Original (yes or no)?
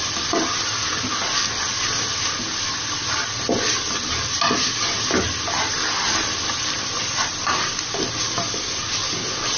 no